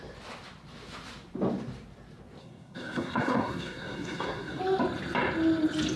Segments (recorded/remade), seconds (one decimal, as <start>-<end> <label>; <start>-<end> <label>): 0.0-2.4 recorded; 2.4-4.6 remade; 4.6-6.0 recorded

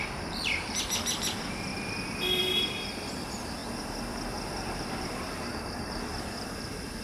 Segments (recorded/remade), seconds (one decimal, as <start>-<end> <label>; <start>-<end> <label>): 0.0-1.7 remade; 1.7-2.4 recorded; 2.4-3.6 remade; 3.6-4.3 recorded; 4.3-7.0 remade

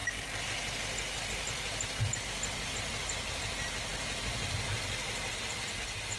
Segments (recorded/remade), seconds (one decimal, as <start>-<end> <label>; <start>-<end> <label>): 0.0-6.2 recorded

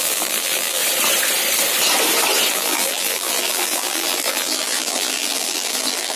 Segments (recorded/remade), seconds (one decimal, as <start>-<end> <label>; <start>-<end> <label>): 0.0-0.8 remade; 0.8-2.5 recorded; 2.5-6.2 remade

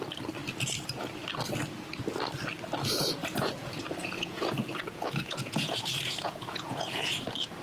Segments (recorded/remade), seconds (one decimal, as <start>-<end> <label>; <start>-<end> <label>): 0.0-3.2 recorded; 3.2-7.1 remade; 7.1-7.6 recorded

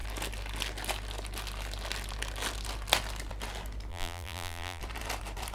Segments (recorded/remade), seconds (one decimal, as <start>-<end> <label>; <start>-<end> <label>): 0.0-3.9 recorded; 3.9-4.8 remade; 4.8-5.5 recorded